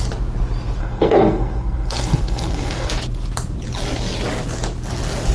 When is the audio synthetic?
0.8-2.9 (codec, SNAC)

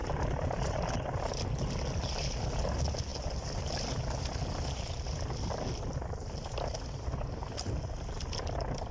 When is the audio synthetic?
0.0-0.6 (vocoder, BigVGAN v2)

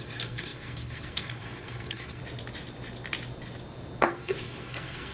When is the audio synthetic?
0.0-2.2 (codec, SNAC); 4.0-5.1

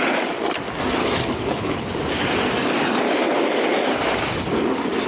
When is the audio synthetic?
1.0-2.0 (codec, HILCodec)